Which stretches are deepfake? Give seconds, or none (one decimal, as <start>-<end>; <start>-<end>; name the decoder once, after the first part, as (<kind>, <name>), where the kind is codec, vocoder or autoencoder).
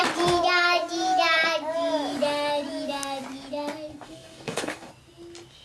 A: 3.9-4.9 (codec, DAC)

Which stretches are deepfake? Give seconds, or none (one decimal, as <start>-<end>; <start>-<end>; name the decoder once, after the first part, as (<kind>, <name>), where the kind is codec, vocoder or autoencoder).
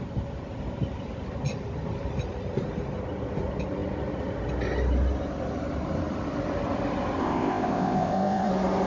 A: 7.2-8.5 (codec, ZipCodec)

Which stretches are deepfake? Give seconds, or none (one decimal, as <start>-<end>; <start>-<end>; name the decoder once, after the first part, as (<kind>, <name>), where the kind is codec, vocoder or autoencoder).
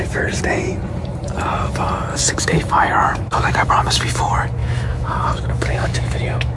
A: 2.1-3.7 (autoencoder, DAC-VAE); 4.6-6.6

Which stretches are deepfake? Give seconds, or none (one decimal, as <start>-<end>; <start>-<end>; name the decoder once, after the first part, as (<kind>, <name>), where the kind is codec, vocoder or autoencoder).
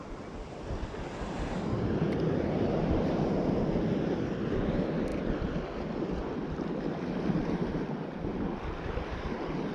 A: none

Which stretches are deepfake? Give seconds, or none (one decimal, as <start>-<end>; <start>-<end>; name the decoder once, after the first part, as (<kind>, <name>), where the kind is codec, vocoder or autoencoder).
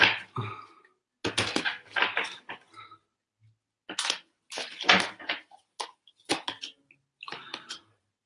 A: 7.5-8.3 (vocoder, BigVGAN v2)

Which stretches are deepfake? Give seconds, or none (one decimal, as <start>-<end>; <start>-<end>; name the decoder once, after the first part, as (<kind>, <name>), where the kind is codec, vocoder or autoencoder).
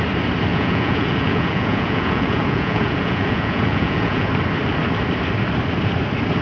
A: 0.5-4.3 (vocoder, Vocos)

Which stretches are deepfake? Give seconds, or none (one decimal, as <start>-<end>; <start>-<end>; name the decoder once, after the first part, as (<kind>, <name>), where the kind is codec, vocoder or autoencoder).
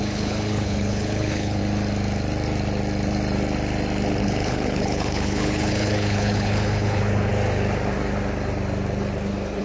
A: 0.0-1.6 (codec, HILCodec); 4.2-7.3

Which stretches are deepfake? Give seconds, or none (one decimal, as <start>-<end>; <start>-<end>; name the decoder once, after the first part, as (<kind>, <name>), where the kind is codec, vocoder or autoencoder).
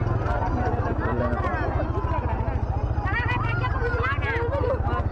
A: none